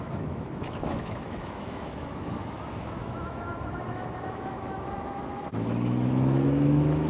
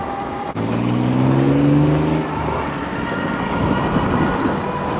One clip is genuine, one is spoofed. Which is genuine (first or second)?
second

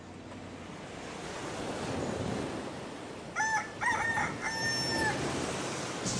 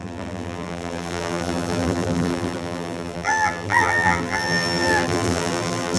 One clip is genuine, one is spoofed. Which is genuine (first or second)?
first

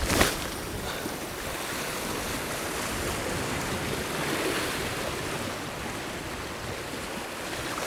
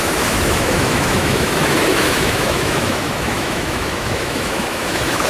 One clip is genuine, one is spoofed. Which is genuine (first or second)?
first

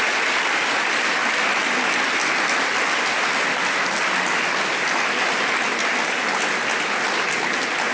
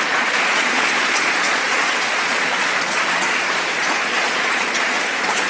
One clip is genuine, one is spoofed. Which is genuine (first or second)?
first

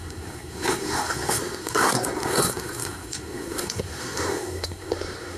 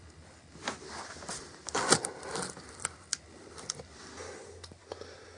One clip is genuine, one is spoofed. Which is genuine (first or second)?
second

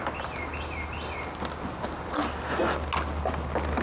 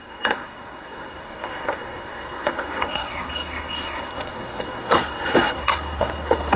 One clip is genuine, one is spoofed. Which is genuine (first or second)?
first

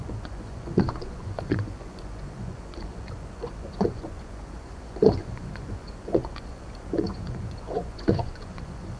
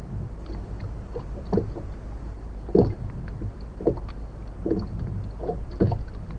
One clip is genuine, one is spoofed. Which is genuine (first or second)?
second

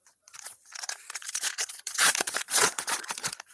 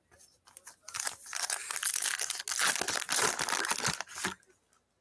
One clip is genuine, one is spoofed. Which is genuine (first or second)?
second